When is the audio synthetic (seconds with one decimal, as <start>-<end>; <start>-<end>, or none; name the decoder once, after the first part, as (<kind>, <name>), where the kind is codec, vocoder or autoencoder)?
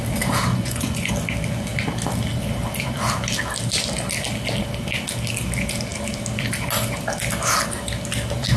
0.5-1.1 (vocoder, Vocos)